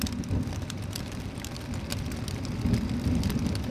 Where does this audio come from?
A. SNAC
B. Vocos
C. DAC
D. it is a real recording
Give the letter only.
D